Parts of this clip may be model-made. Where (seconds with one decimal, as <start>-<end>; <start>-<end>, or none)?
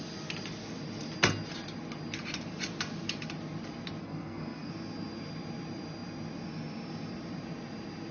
4.0-4.7